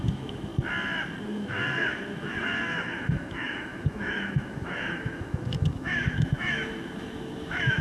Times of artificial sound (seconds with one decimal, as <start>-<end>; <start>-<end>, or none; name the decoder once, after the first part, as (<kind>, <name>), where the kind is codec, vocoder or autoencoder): 0.0-0.5 (autoencoder, DAC-VAE); 1.2-7.8